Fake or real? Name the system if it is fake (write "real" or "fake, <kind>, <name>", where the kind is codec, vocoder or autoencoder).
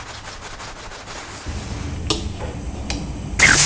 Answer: real